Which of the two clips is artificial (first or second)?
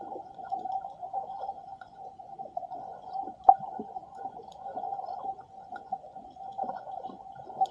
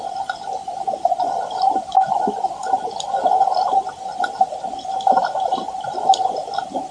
first